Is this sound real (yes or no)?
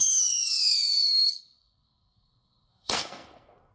no